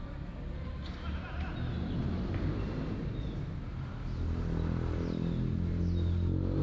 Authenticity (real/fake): real